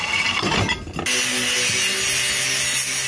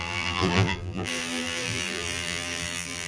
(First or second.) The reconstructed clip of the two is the second